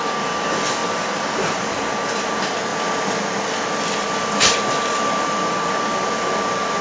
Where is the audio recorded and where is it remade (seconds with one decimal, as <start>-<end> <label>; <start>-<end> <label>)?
0.0-6.8 recorded